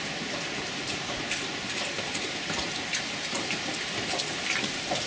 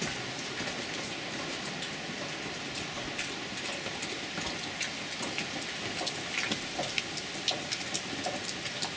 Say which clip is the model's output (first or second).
first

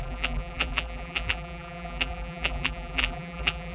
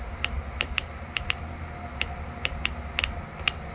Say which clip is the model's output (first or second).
first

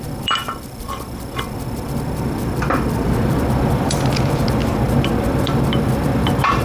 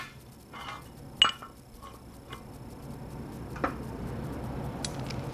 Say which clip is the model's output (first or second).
first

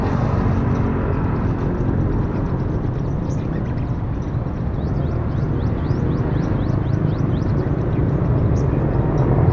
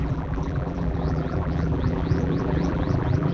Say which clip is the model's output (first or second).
second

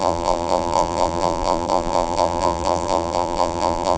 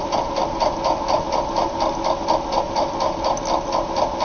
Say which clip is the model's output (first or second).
first